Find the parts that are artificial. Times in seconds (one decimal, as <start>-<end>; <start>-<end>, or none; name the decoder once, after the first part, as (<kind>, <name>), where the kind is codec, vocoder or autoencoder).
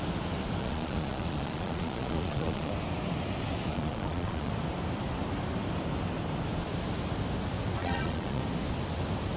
0.6-2.7 (vocoder, Vocos); 3.7-4.5; 7.8-8.4